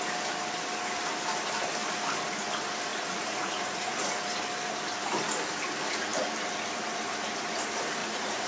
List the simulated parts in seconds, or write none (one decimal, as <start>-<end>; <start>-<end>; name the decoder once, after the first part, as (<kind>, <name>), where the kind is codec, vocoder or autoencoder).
2.9-4.1 (vocoder, Vocos); 8.0-8.5